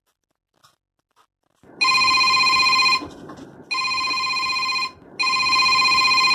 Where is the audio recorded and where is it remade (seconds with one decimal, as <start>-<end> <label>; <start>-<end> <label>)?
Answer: 0.0-6.3 recorded

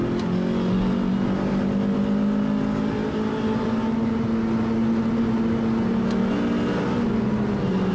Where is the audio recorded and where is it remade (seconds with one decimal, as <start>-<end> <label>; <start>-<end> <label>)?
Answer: 0.0-7.9 recorded

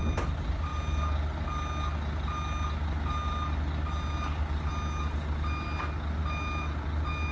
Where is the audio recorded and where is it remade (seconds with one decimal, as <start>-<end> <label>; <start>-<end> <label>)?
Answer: 0.0-7.3 recorded

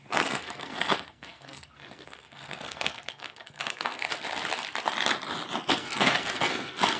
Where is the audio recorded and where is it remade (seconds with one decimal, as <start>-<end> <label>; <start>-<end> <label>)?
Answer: 0.0-4.1 remade; 4.1-5.7 recorded; 5.7-7.0 remade